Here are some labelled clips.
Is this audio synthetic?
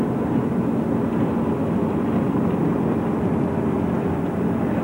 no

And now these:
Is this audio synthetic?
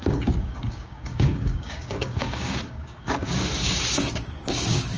yes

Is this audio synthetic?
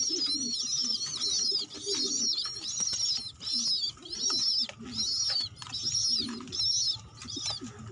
no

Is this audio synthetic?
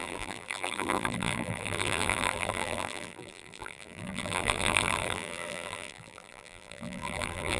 yes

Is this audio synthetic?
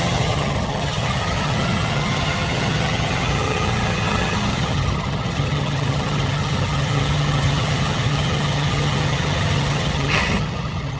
yes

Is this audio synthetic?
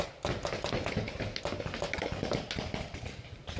no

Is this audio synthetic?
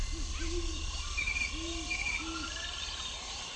no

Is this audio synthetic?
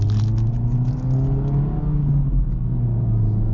no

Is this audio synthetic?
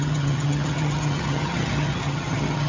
yes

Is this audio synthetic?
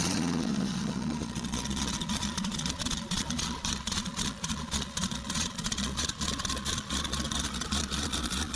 yes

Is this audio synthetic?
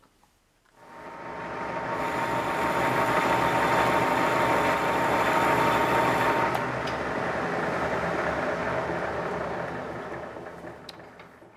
no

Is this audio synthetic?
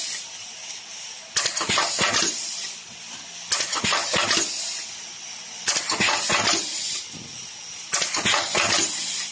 no